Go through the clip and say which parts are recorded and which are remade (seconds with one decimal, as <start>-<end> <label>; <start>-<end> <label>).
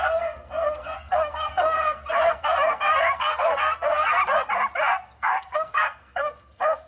0.0-4.2 remade; 4.2-4.8 recorded; 4.8-6.9 remade